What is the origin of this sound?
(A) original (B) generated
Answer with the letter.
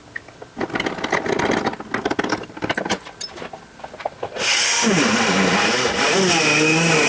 A